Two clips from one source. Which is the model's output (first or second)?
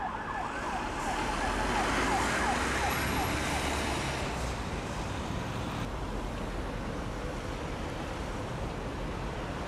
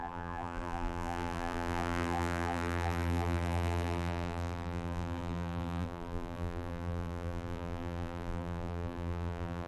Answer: second